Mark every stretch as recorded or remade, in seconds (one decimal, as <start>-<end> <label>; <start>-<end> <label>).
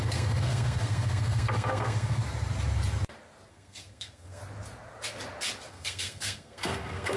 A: 0.0-2.2 remade; 2.2-3.5 recorded; 3.5-4.4 remade; 4.4-5.7 recorded; 5.7-7.2 remade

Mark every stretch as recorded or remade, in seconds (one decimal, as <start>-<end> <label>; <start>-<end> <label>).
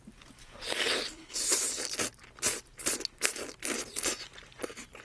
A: 0.0-1.1 recorded; 1.1-1.8 remade; 1.8-5.0 recorded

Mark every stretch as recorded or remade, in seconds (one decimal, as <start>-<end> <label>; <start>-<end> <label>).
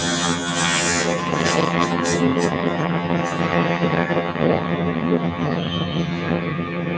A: 0.0-7.0 remade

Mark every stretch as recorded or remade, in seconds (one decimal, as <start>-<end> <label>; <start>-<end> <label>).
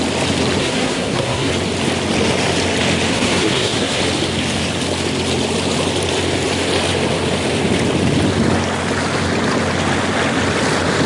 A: 0.0-0.6 recorded; 0.6-1.5 remade; 1.5-3.1 recorded; 3.1-4.0 remade; 4.0-11.1 recorded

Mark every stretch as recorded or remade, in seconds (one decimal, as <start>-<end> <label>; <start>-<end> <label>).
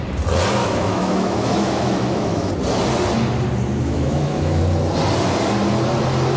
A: 0.0-0.6 recorded; 0.6-2.5 remade; 2.5-3.8 recorded; 3.8-4.6 remade; 4.6-6.4 recorded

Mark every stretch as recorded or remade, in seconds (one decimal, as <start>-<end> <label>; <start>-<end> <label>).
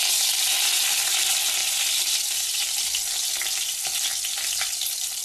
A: 0.0-5.2 recorded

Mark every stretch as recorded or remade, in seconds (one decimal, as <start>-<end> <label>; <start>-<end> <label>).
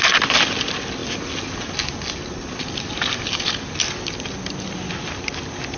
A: 0.0-5.8 recorded